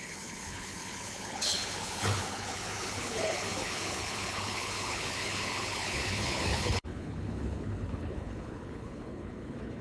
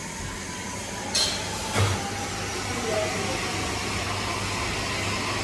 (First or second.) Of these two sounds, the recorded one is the second